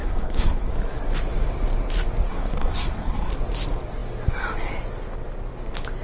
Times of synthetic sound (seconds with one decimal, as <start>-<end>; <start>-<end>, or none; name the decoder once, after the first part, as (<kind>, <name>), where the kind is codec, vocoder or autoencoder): 0.0-0.7 (codec, SNAC); 2.3-3.3

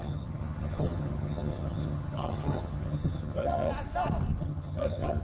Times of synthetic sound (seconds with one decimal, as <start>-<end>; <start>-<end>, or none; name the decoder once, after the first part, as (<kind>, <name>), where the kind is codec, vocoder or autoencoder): 0.0-3.7 (vocoder, HiFi-GAN); 4.4-5.2

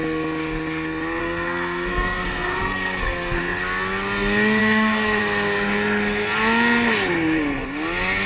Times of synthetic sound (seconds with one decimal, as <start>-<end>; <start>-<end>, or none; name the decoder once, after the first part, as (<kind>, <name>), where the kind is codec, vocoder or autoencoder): 1.2-3.4 (codec, SNAC); 4.6-5.2

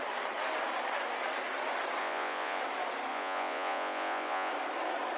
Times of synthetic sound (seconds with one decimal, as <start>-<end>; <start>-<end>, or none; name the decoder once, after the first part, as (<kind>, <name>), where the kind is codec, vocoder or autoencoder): 2.0-2.6 (vocoder, Vocos); 3.1-4.5

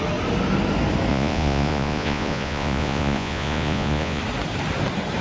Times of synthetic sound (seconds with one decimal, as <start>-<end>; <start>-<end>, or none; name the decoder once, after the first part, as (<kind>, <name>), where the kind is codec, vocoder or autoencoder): 1.1-4.2 (vocoder, Vocos)

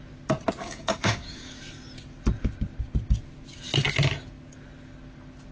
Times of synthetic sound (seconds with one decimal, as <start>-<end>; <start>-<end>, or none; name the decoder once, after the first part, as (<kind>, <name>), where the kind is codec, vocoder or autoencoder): 0.6-1.5 (codec, DAC)

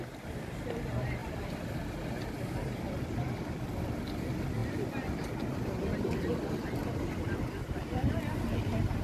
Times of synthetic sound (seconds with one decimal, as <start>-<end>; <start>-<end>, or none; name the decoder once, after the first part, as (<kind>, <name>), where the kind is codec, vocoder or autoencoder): 1.2-4.0 (vocoder, BigVGAN v2); 6.8-7.5